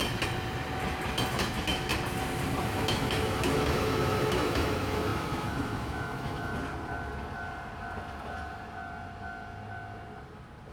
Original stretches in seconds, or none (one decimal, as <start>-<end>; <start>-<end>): 0.0-1.3; 1.9-2.6; 6.5-10.7